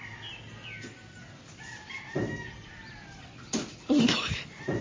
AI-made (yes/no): no